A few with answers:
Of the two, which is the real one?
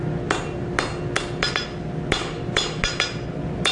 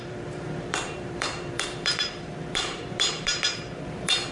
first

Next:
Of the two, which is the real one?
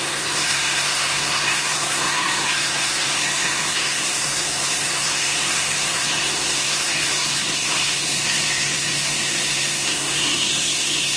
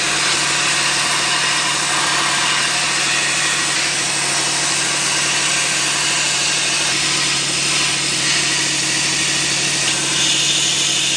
second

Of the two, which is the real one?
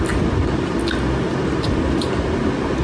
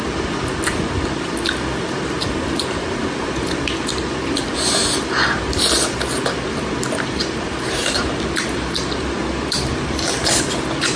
first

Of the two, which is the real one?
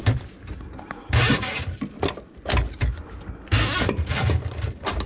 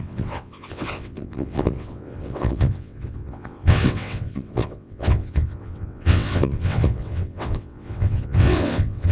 first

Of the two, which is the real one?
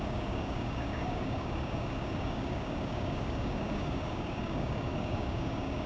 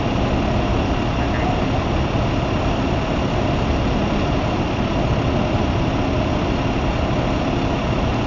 second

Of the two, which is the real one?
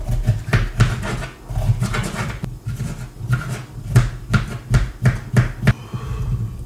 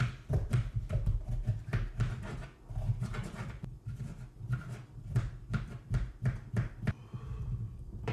first